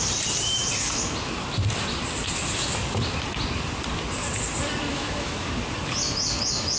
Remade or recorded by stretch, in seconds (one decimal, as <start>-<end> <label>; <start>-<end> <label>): 0.0-4.9 recorded; 4.9-5.5 remade; 5.5-6.8 recorded